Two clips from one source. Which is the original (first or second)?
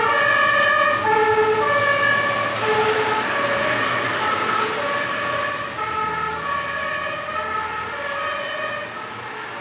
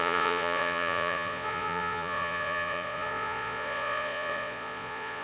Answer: first